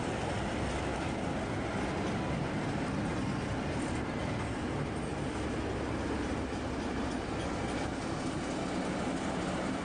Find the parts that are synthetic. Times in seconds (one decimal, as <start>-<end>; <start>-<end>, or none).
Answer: none